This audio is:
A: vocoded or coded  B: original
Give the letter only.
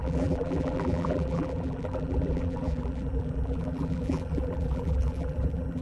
A